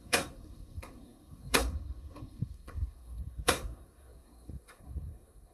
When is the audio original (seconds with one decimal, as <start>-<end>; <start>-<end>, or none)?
none